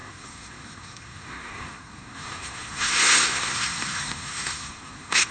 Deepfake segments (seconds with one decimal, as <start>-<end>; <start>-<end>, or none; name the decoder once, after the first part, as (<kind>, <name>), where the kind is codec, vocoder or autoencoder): 0.0-5.3 (codec, SNAC)

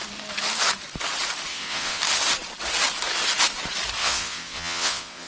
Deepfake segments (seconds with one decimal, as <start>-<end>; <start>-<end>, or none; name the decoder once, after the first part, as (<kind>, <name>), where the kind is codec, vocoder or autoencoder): 1.5-2.0 (vocoder, WaveNeXt); 4.0-5.3

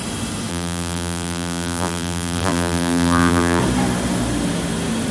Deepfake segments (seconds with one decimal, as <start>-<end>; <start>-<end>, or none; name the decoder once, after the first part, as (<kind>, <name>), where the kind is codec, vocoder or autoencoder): 0.5-3.6 (vocoder, BigVGAN v2)

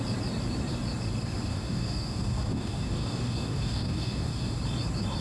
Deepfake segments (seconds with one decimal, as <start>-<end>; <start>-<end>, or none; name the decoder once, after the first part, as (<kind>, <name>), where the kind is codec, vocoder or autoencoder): 1.5-4.6 (codec, DAC)